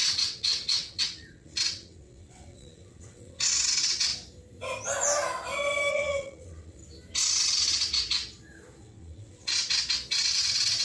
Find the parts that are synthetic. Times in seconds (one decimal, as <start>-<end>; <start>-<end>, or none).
0.0-4.1; 5.9-6.8; 8.8-9.5; 10.1-10.8

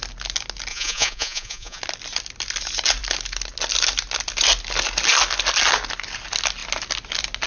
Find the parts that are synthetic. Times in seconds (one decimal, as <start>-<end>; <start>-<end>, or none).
0.7-1.8

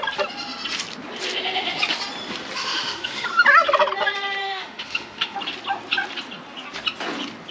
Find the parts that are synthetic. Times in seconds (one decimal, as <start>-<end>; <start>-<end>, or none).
2.6-3.3; 4.4-5.4

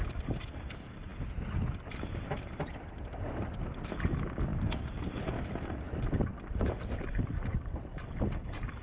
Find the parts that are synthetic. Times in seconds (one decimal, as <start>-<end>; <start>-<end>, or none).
none

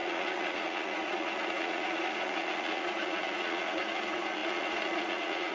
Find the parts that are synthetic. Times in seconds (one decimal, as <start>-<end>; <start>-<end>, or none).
0.0-5.5

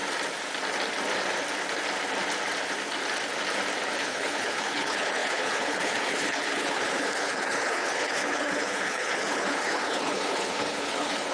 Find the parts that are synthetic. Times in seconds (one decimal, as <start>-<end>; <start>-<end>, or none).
4.0-11.3

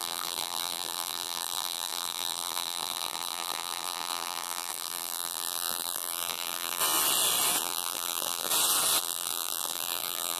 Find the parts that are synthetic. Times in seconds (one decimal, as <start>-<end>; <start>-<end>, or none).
0.0-6.8; 7.6-8.5; 9.0-10.4

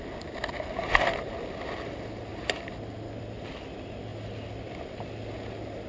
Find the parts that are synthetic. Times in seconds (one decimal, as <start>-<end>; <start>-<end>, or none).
none